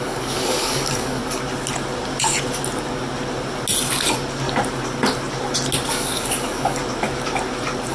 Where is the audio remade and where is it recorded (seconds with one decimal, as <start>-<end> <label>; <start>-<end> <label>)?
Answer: 0.0-1.2 remade; 1.2-5.9 recorded; 5.9-6.8 remade; 6.8-7.9 recorded